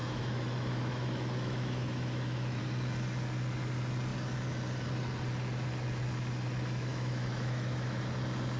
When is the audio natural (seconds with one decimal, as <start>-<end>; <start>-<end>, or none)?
2.6-6.9; 8.0-8.6